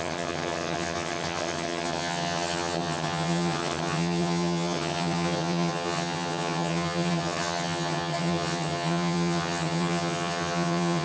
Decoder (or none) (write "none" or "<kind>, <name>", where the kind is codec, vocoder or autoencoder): vocoder, HiFi-GAN